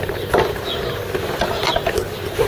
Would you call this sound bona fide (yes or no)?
yes